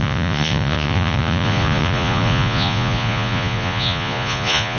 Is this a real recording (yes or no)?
no